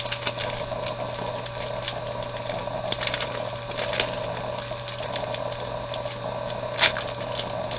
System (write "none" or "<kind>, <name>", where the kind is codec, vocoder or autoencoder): none